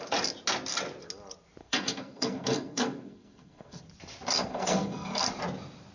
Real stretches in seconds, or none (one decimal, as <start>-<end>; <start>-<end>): 0.0-1.6; 3.8-4.4; 5.3-5.9